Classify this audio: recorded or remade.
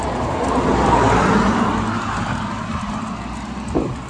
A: recorded